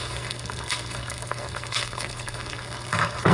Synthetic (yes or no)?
yes